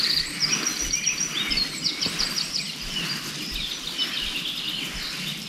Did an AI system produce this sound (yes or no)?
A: no